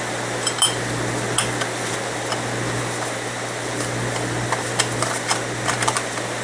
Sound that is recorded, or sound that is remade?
recorded